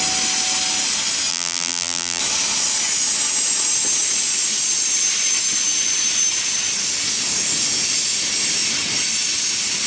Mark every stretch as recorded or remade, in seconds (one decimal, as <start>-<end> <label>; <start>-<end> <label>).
0.0-1.3 recorded; 1.3-2.2 remade; 2.2-9.9 recorded